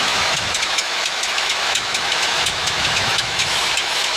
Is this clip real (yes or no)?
no